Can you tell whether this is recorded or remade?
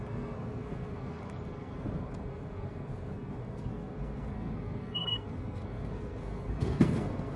remade